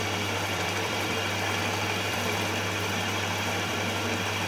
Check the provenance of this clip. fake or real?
fake